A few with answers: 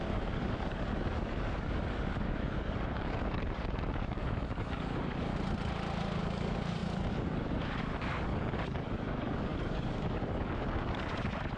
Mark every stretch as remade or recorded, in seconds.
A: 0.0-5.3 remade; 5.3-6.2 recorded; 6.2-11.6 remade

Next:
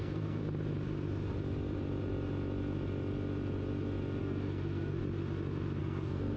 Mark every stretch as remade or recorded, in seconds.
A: 0.0-0.4 remade; 0.4-4.2 recorded; 4.2-5.0 remade; 5.0-5.8 recorded; 5.8-6.4 remade

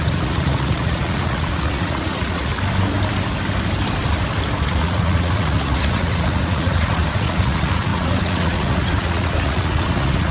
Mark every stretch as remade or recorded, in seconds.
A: 0.0-2.5 remade; 2.5-4.7 recorded; 4.7-10.3 remade